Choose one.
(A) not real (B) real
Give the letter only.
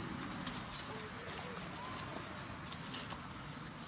B